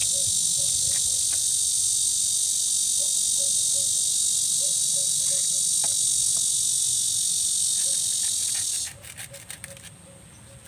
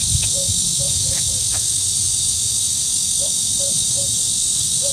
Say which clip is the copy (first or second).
second